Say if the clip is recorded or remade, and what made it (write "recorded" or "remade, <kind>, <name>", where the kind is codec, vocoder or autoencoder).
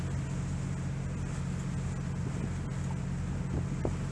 recorded